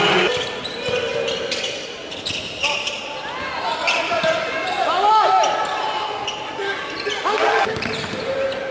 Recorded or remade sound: recorded